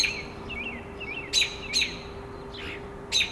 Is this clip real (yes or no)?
yes